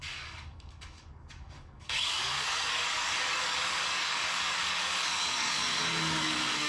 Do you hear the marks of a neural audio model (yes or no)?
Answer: yes